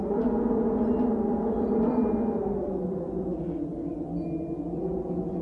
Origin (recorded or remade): recorded